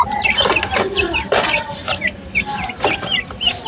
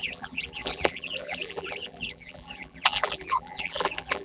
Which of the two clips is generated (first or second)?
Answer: second